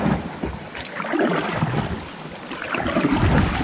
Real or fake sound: real